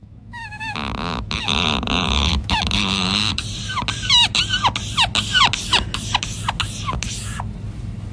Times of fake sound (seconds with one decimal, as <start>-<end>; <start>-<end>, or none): 0.0-3.3